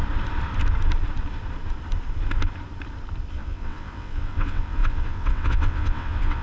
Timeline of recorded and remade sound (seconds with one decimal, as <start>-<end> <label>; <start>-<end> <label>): 0.0-3.3 recorded; 3.3-6.4 remade